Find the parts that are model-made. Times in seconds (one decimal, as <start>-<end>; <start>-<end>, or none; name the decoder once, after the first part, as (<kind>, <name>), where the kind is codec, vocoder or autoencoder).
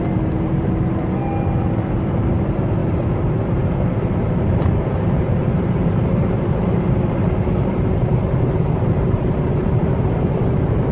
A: 0.0-1.2 (vocoder, BigVGAN v2); 1.7-10.9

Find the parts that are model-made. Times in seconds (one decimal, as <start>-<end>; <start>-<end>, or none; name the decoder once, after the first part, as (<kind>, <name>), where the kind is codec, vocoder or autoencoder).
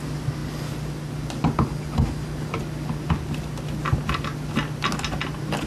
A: none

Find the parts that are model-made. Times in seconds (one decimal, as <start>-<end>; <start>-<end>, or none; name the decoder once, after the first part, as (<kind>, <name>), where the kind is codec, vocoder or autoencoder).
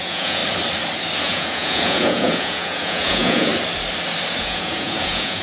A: 0.0-0.4 (vocoder, Vocos); 1.2-3.5; 4.4-5.4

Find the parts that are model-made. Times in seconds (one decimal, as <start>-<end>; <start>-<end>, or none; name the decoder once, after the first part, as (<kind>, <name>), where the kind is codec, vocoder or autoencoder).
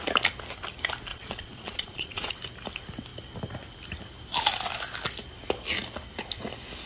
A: 1.1-2.3 (vocoder, Vocos)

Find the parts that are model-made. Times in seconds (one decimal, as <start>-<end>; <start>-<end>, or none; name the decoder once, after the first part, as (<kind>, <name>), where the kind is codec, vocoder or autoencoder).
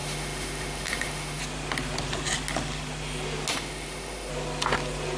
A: 0.0-1.4 (autoencoder, DAC-VAE); 3.5-4.3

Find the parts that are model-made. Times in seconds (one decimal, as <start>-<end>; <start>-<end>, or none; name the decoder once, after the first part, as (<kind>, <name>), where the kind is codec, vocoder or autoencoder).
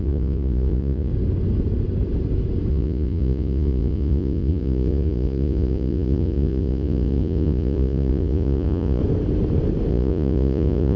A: 0.0-1.1 (vocoder, Vocos); 2.7-9.0; 9.9-11.0